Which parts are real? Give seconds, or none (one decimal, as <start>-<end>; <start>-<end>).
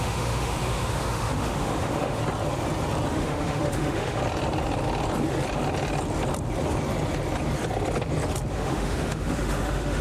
2.2-3.1; 4.2-8.5